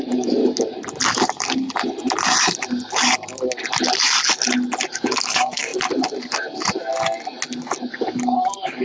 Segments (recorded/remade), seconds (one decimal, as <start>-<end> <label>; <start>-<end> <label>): 0.0-0.4 remade; 0.4-4.9 recorded; 4.9-5.7 remade; 5.7-7.9 recorded; 7.9-8.8 remade